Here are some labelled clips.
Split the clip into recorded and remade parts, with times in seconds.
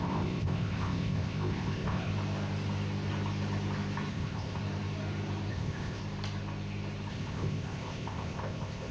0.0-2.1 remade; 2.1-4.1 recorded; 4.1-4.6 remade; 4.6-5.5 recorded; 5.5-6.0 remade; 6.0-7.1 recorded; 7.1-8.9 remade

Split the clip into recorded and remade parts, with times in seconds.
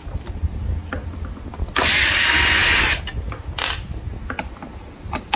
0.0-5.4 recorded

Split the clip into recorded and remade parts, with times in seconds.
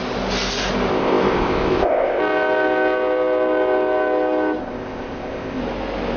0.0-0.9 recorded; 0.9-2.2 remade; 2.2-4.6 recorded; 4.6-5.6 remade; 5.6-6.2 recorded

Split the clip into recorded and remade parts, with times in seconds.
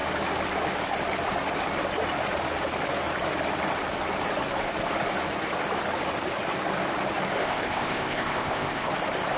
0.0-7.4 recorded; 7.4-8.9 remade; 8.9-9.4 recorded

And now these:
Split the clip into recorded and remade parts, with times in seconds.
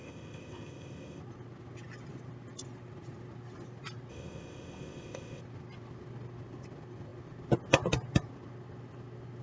0.0-1.2 remade; 1.2-4.1 recorded; 4.1-5.4 remade; 5.4-9.4 recorded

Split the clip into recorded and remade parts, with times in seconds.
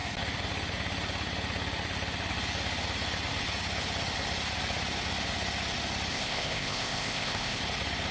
0.0-6.1 recorded; 6.1-7.6 remade; 7.6-8.1 recorded